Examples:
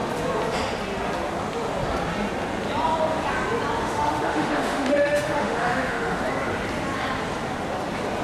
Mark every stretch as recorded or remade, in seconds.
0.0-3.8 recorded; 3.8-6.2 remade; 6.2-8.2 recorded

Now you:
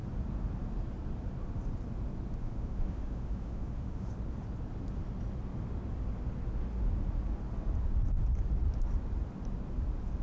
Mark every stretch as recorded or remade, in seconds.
0.0-2.4 recorded; 2.4-4.1 remade; 4.1-10.2 recorded

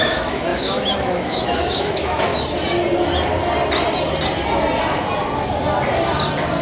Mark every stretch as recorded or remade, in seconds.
0.0-2.3 remade; 2.3-6.6 recorded

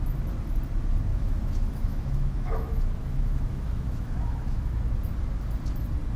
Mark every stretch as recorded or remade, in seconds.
0.0-1.1 recorded; 1.1-4.8 remade; 4.8-6.2 recorded

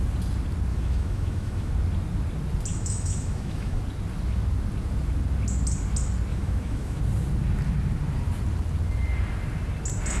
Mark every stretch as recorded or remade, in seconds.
0.0-0.7 recorded; 0.7-1.7 remade; 1.7-2.7 recorded; 2.7-3.8 remade; 3.8-6.3 recorded; 6.3-7.0 remade; 7.0-10.2 recorded

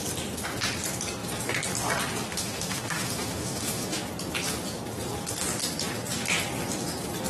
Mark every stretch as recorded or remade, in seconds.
0.0-2.3 recorded; 2.3-4.0 remade; 4.0-7.3 recorded

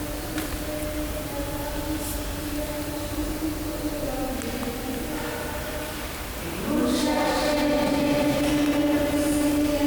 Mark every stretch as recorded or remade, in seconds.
0.0-9.9 recorded